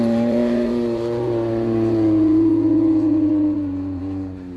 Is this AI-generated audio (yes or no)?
yes